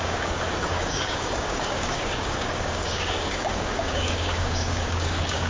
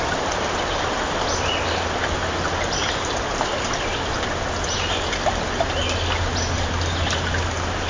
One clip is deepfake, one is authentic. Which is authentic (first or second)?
second